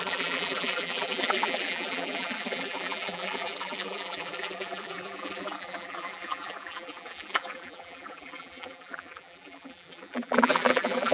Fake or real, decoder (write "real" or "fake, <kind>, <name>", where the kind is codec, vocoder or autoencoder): fake, vocoder, BigVGAN v2